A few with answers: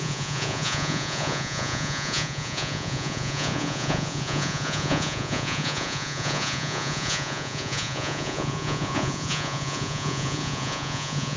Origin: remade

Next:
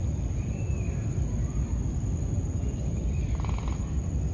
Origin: recorded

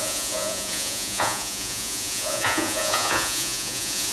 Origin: remade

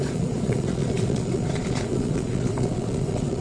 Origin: remade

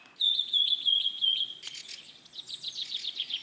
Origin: remade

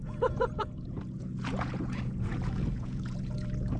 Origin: remade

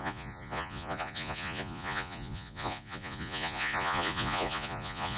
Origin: remade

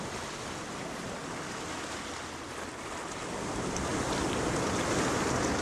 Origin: recorded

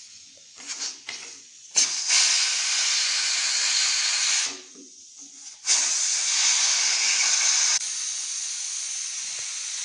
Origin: remade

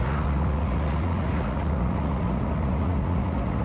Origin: remade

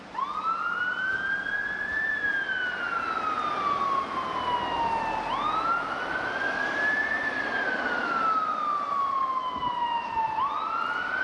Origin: recorded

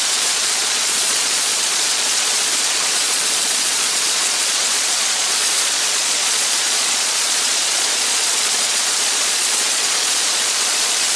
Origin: remade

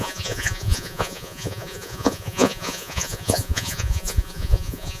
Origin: remade